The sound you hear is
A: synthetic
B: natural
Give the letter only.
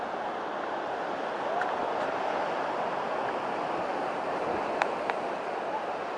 B